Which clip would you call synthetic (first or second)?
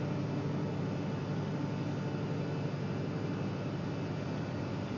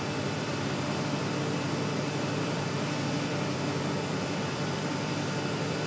second